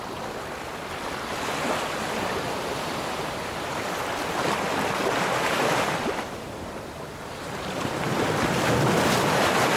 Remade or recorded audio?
remade